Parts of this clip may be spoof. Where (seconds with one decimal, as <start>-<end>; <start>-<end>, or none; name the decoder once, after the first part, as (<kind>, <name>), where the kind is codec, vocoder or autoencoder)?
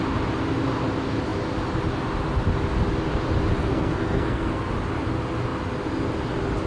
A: 3.6-4.7 (codec, SNAC)